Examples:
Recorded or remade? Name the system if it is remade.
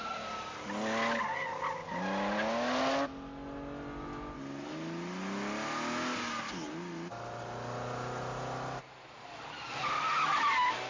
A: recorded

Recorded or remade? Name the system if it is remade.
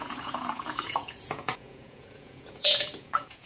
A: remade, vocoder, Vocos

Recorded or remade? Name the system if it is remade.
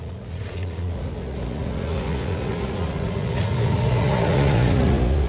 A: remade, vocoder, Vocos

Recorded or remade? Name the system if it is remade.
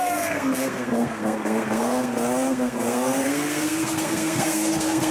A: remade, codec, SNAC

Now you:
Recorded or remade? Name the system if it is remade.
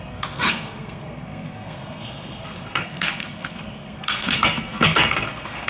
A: remade, codec, SNAC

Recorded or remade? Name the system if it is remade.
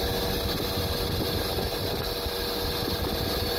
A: recorded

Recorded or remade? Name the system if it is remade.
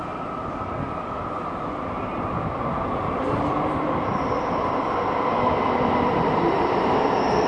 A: recorded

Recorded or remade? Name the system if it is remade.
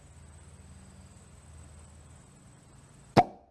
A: recorded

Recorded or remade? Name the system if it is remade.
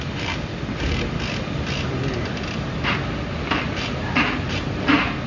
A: recorded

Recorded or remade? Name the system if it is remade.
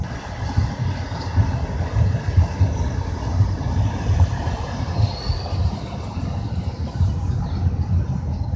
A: recorded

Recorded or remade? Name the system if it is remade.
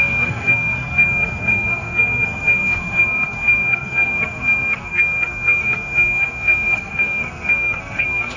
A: remade, codec, SNAC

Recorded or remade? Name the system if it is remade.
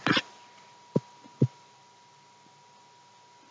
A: recorded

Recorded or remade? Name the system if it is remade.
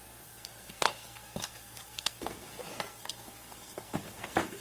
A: remade, codec, SNAC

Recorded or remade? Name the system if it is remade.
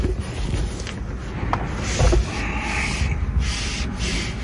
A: recorded